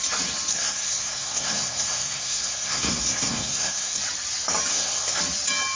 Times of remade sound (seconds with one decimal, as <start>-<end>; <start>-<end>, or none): 0.5-4.0; 4.7-5.2